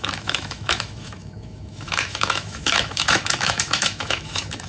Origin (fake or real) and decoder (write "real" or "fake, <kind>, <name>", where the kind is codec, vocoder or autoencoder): fake, autoencoder, DAC-VAE